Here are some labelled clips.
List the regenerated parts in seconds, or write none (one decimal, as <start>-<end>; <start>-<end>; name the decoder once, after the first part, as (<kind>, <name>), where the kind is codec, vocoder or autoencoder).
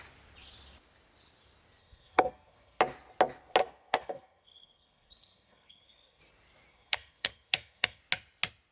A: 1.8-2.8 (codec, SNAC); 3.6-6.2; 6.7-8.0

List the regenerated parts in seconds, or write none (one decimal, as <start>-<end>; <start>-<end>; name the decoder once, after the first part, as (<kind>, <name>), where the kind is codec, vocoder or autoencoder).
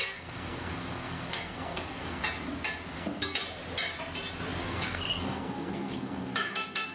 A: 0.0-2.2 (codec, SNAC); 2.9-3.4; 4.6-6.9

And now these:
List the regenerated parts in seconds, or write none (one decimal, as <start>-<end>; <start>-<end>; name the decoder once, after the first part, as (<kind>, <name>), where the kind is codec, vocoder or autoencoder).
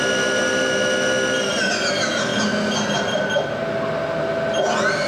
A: none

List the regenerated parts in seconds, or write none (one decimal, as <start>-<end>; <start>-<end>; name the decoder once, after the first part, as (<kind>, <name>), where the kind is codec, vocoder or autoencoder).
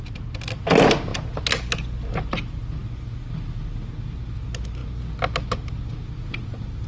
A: none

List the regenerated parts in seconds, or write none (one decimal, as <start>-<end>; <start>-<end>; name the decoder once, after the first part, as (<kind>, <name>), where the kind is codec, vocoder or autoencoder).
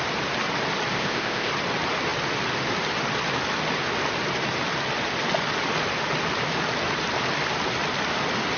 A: 0.9-1.5 (codec, ZipCodec)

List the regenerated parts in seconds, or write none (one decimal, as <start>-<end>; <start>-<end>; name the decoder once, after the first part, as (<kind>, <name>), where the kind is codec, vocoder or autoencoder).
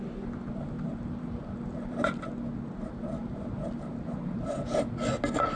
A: 0.9-2.3 (vocoder, BigVGAN v2)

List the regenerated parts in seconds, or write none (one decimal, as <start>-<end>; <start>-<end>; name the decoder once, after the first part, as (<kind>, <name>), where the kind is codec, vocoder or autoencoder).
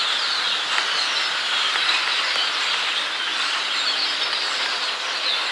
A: none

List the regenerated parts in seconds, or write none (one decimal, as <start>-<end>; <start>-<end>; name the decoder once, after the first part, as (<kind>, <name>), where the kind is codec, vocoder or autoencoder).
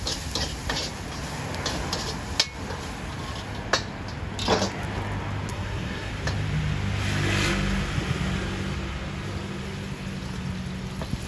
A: 5.5-6.1 (codec, SNAC)